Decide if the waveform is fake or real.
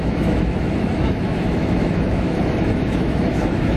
fake